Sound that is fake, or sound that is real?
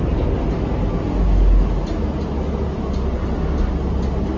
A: real